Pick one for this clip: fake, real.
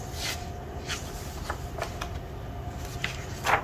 real